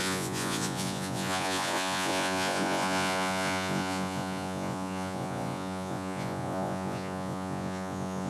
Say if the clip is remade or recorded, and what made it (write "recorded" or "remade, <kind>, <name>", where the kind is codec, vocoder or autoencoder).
remade, vocoder, Vocos